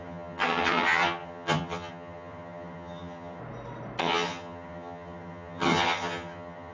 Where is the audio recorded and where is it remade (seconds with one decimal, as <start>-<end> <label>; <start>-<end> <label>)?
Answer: 0.0-3.4 remade; 3.4-4.0 recorded; 4.0-6.7 remade